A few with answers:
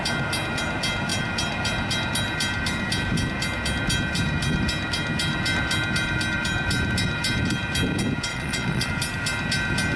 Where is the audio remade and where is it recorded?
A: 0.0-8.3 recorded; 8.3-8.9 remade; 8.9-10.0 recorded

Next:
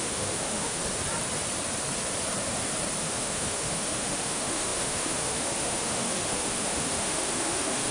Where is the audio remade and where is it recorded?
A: 0.0-0.8 remade; 0.8-3.0 recorded; 3.0-7.9 remade

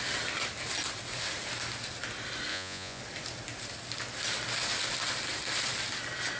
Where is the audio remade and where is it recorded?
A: 0.0-2.5 recorded; 2.5-3.0 remade; 3.0-6.4 recorded

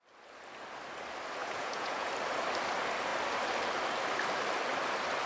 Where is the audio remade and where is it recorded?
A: 0.0-1.4 recorded; 1.4-2.1 remade; 2.1-5.3 recorded

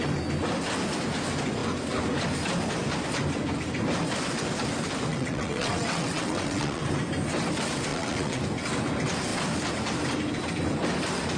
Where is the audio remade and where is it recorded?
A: 0.0-5.1 recorded; 5.1-6.8 remade; 6.8-7.9 recorded; 7.9-8.4 remade; 8.4-11.4 recorded

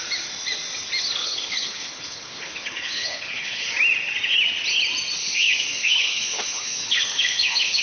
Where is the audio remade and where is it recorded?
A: 0.0-1.2 recorded; 1.2-3.7 remade; 3.7-5.2 recorded; 5.2-7.8 remade

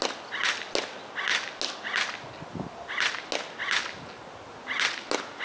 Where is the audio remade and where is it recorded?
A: 0.0-5.4 recorded